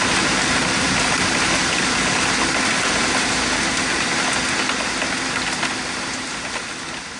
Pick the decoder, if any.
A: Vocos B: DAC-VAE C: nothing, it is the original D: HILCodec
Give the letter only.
C